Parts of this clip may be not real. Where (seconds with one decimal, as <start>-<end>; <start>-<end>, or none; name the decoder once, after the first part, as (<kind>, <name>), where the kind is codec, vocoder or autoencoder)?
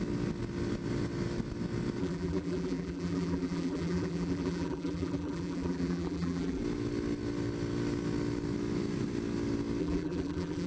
2.0-6.6 (vocoder, BigVGAN v2); 9.8-10.7